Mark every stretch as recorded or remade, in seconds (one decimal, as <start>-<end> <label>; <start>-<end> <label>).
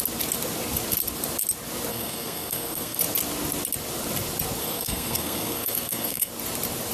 0.0-1.9 recorded; 1.9-3.0 remade; 3.0-4.6 recorded; 4.6-6.3 remade; 6.3-6.9 recorded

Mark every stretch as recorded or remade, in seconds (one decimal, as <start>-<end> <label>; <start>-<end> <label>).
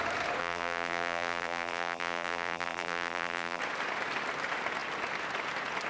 0.0-0.4 recorded; 0.4-3.6 remade; 3.6-5.9 recorded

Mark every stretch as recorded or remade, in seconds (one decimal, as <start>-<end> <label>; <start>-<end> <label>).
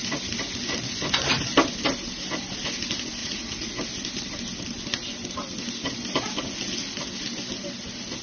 0.0-3.2 recorded; 3.2-3.7 remade; 3.7-8.2 recorded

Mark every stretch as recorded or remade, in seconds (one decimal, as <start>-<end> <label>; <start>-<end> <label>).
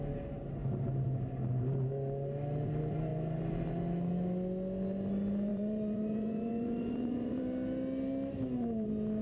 0.0-5.5 recorded; 5.5-7.4 remade; 7.4-9.2 recorded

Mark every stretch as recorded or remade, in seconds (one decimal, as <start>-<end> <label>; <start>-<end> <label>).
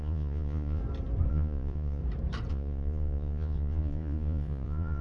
0.0-0.8 remade; 0.8-1.3 recorded; 1.3-2.0 remade; 2.0-2.5 recorded; 2.5-5.0 remade